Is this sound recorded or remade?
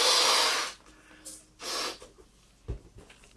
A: recorded